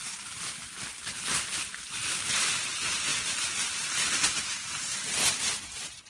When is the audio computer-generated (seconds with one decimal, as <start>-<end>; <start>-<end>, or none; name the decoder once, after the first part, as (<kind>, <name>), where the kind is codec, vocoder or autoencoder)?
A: none